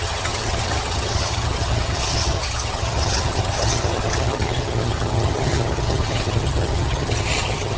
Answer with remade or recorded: remade